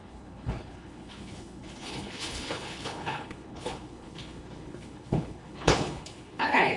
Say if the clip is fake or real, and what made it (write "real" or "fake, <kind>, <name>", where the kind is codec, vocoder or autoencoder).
fake, codec, HILCodec